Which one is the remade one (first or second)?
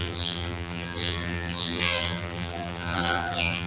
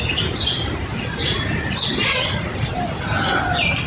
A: first